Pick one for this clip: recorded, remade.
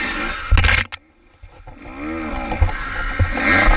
recorded